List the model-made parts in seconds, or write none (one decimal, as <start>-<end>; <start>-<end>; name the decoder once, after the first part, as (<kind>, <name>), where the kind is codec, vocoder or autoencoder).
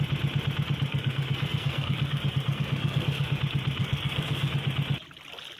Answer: 0.9-3.4 (codec, SNAC); 3.8-4.5